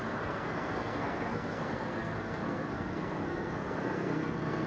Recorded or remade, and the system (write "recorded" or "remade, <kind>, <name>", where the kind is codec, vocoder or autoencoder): remade, codec, SNAC